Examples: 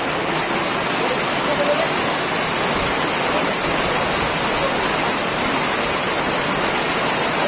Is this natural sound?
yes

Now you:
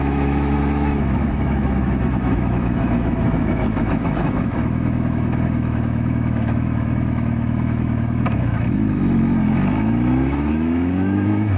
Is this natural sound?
no